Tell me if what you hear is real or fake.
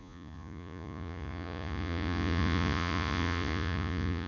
fake